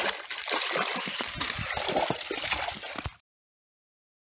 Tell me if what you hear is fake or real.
real